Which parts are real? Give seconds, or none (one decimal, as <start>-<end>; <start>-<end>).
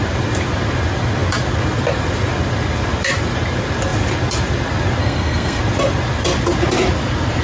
0.0-5.0; 5.6-7.4